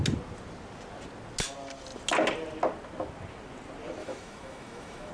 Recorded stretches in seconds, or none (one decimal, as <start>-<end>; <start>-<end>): 0.0-4.0